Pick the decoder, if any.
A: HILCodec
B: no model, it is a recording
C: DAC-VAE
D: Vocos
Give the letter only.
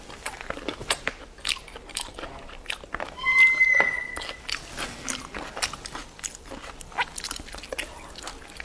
B